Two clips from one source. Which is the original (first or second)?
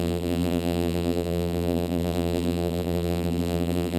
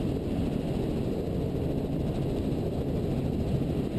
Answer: second